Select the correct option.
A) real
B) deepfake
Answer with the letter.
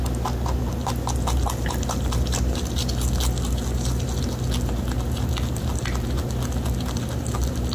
A